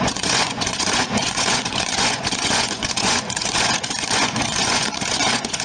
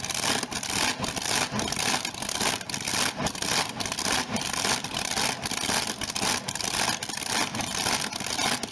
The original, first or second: second